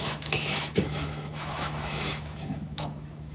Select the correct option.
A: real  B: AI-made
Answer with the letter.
B